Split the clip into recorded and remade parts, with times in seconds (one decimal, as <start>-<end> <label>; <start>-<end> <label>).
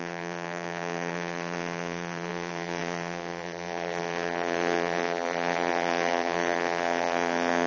0.0-7.7 remade